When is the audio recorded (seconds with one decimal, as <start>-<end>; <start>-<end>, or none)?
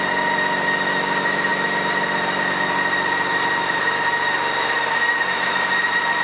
0.0-6.2